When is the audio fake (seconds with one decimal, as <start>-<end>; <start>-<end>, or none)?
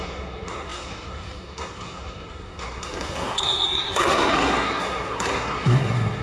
0.0-6.2